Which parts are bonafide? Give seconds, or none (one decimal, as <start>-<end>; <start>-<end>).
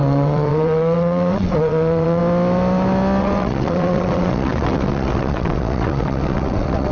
2.2-3.2